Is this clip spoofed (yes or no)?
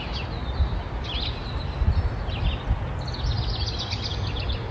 no